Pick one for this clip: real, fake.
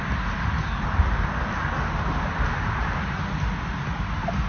real